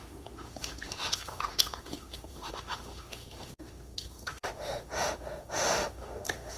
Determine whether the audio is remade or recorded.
remade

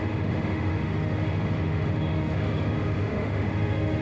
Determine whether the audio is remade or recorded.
remade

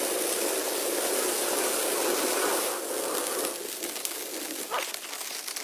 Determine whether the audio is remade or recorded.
recorded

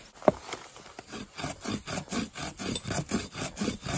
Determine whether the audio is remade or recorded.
recorded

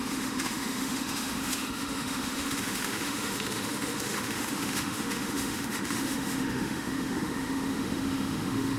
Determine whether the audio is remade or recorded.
remade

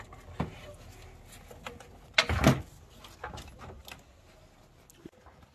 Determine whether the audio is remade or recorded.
recorded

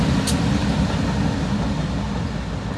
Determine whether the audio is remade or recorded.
recorded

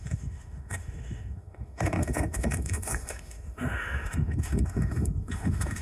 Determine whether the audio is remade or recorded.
remade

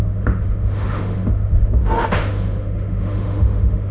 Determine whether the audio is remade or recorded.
remade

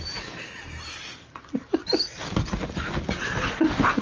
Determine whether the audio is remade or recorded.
recorded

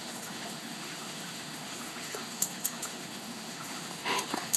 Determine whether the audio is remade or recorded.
remade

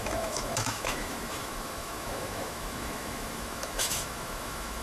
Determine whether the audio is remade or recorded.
remade